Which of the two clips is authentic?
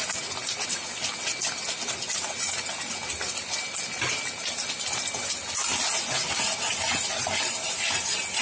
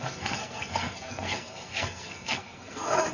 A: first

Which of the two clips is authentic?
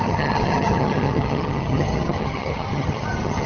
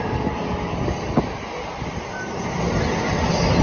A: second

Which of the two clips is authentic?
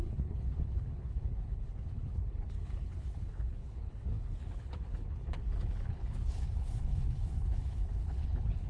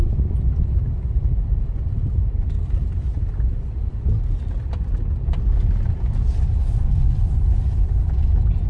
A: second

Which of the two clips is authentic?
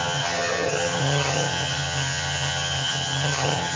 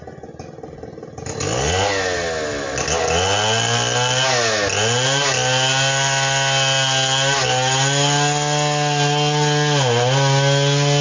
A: second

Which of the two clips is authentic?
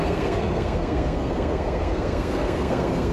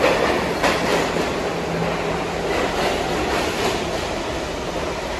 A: second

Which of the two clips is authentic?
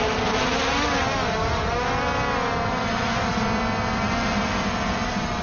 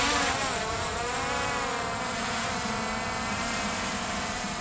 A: first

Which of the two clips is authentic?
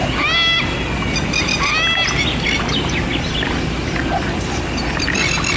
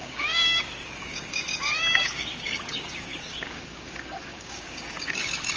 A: first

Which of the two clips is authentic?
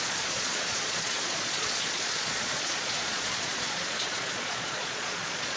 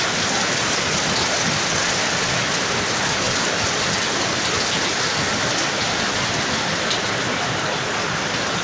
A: second